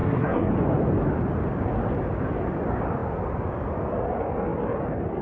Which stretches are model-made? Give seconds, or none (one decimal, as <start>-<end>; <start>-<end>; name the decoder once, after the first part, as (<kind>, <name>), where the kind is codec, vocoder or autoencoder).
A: 0.0-0.5 (codec, SNAC)